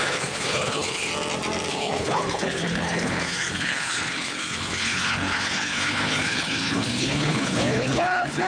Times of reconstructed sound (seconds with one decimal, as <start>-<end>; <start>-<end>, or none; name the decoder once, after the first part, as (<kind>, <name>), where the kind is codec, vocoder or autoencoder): 0.0-1.1 (codec, HILCodec); 1.7-8.5